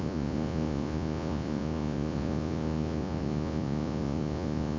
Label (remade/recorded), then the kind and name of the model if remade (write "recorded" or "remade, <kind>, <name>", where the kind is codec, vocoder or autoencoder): remade, vocoder, Vocos